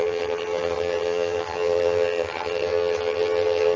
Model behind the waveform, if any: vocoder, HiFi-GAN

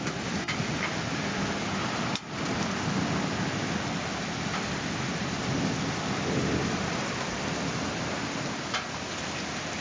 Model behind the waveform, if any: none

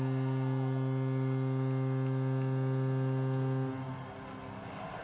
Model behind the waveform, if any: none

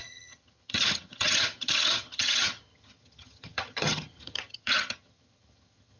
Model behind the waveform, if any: vocoder, HiFi-GAN